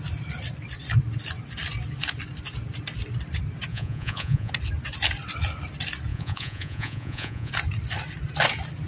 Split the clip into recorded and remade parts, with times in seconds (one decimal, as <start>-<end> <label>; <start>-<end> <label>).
0.0-3.7 recorded; 3.7-4.5 remade; 4.5-6.1 recorded; 6.1-7.5 remade; 7.5-8.9 recorded